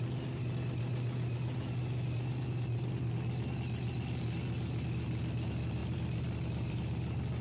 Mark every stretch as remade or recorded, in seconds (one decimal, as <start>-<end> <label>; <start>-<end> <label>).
0.0-5.8 recorded; 5.8-6.8 remade; 6.8-7.4 recorded